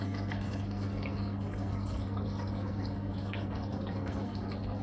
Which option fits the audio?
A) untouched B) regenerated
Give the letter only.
B